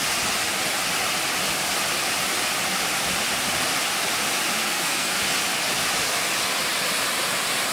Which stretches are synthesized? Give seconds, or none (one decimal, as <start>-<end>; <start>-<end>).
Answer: 4.6-5.2